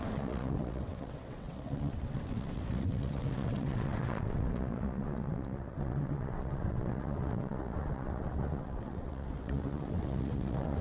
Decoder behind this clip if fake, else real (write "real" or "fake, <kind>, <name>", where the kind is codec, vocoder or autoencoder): fake, vocoder, WaveNeXt